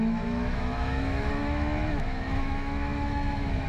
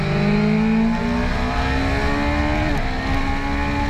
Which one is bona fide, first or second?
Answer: second